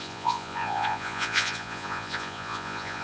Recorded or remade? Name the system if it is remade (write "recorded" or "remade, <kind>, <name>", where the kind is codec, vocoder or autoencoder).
remade, vocoder, Vocos